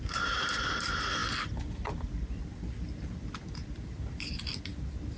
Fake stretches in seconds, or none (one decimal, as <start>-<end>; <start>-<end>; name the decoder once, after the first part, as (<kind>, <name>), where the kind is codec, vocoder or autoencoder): none